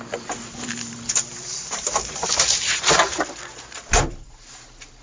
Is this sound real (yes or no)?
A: no